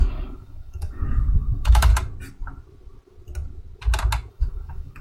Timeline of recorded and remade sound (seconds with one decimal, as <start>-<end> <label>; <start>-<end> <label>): 0.0-1.9 remade; 1.9-4.3 recorded; 4.3-5.0 remade